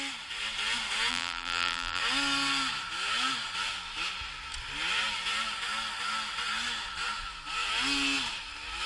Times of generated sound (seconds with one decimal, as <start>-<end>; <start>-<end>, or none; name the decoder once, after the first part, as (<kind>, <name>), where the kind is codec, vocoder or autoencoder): 1.1-2.0 (vocoder, BigVGAN v2)